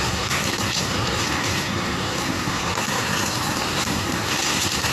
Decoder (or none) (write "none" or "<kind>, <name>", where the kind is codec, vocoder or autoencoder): codec, SNAC